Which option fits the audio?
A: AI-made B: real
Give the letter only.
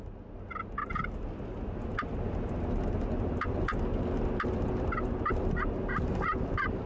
B